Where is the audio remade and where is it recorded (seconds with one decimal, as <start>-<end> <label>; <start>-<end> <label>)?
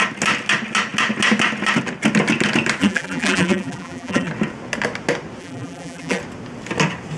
0.0-2.8 recorded; 2.8-4.3 remade; 4.3-5.4 recorded; 5.4-6.2 remade; 6.2-7.2 recorded